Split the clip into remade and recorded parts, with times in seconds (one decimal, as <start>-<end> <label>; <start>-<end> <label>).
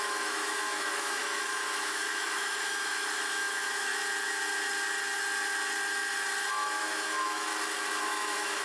0.0-3.9 remade; 3.9-6.5 recorded; 6.5-7.5 remade; 7.5-8.0 recorded; 8.0-8.6 remade